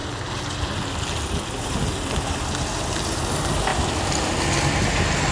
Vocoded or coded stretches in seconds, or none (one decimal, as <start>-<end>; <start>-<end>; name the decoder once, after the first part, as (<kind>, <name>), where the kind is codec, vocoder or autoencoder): none